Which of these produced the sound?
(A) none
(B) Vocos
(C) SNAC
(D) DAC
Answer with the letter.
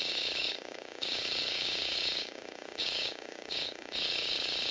D